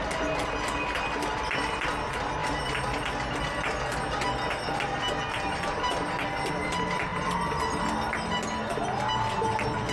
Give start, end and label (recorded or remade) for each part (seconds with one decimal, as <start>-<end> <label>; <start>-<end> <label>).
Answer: 0.0-9.9 recorded